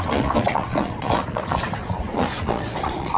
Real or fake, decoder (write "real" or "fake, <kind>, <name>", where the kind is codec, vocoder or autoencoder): fake, vocoder, Vocos